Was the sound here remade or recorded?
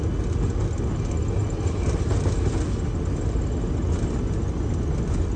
recorded